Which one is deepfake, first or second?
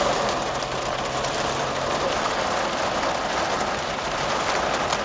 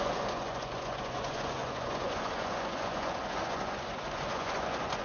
second